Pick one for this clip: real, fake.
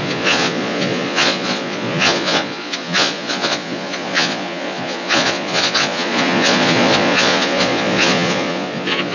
fake